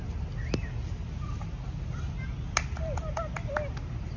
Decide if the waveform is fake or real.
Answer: real